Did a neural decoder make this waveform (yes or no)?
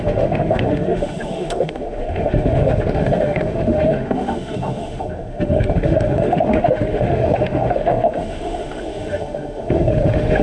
yes